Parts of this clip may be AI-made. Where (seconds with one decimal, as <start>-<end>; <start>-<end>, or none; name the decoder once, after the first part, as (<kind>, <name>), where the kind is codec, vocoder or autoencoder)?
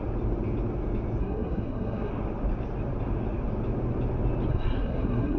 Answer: 1.2-2.1 (codec, SNAC); 4.5-5.4